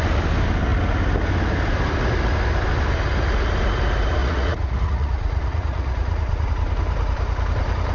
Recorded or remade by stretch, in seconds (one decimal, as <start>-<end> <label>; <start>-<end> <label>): 0.0-4.2 recorded; 4.2-6.5 remade; 6.5-7.9 recorded